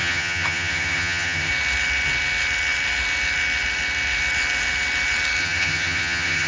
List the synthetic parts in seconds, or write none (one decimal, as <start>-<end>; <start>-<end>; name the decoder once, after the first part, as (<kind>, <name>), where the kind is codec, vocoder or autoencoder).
0.0-1.5 (vocoder, HiFi-GAN); 5.4-6.5